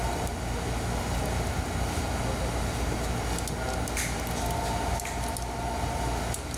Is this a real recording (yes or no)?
yes